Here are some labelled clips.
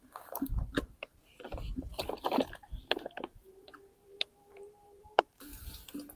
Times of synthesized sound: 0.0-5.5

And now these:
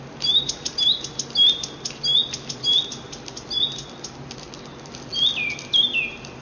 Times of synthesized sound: none